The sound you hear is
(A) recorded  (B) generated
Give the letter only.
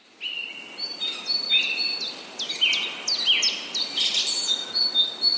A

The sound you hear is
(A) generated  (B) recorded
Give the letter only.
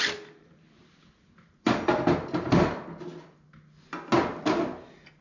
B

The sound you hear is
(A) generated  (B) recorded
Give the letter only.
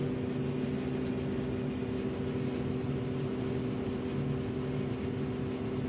B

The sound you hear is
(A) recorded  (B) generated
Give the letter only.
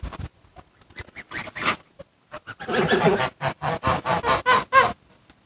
A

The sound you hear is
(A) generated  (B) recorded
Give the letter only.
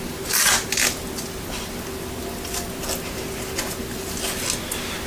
B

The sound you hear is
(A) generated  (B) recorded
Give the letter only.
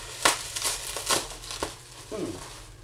B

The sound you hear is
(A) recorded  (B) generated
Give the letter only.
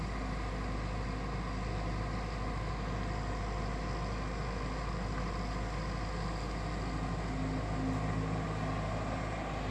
A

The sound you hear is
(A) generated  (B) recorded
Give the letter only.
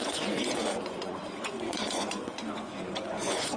A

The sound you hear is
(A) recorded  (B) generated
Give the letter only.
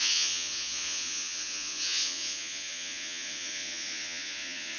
B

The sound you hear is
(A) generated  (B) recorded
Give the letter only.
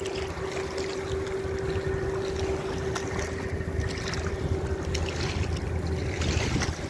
B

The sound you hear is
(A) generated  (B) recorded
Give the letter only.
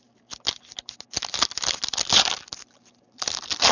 B